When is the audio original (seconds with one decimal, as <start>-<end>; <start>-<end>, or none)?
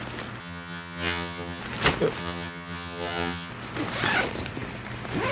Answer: 0.0-0.4; 1.6-2.2; 3.5-5.3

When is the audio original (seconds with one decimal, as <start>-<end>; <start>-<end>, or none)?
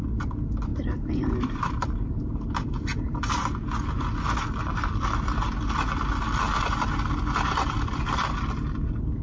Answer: 0.0-0.7; 2.3-9.2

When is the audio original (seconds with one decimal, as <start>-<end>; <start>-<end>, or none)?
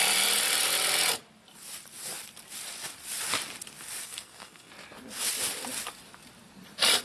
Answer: 0.0-4.0; 4.7-7.0